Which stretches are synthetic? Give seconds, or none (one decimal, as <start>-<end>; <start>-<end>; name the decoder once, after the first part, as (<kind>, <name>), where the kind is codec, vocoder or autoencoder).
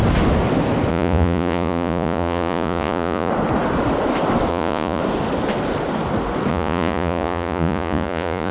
0.9-3.3 (vocoder, Vocos); 4.5-5.0; 6.5-8.5